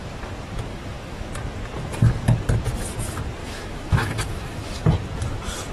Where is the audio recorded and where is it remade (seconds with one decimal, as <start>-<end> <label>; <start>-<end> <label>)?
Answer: 0.0-0.7 recorded; 0.7-1.3 remade; 1.3-3.4 recorded; 3.4-4.8 remade; 4.8-5.7 recorded